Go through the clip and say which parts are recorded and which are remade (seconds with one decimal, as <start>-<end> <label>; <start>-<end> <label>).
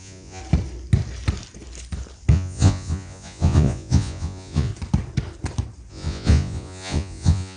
0.0-0.4 remade; 0.4-2.3 recorded; 2.3-4.7 remade; 4.7-5.9 recorded; 5.9-7.6 remade